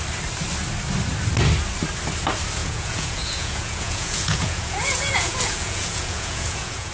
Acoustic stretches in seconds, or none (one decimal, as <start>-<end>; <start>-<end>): 0.0-2.6